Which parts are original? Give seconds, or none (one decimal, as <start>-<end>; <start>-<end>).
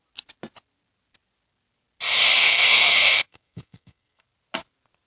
0.0-2.3; 4.2-5.1